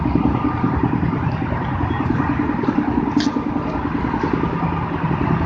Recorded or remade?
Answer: recorded